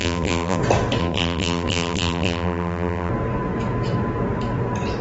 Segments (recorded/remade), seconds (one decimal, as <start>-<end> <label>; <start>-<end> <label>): 0.0-0.6 remade; 0.6-1.0 recorded; 1.0-3.1 remade; 3.1-5.0 recorded